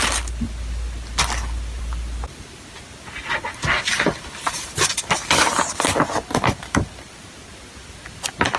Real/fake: real